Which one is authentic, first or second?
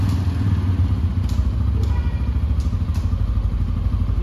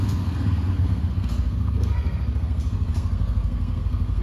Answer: first